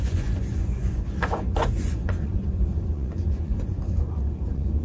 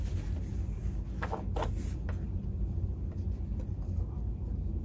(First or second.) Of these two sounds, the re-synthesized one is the first